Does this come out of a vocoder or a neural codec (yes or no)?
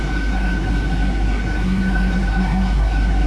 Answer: yes